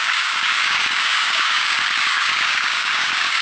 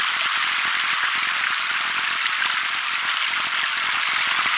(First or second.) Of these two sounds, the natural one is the second